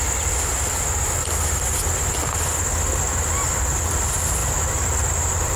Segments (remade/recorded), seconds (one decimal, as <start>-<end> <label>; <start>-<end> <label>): 0.0-4.4 recorded; 4.4-5.6 remade